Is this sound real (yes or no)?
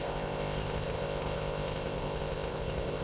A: no